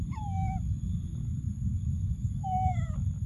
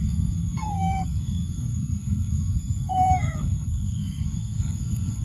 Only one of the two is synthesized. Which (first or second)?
second